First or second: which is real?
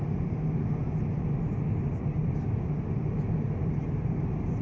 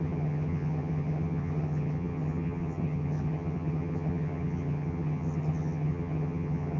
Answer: first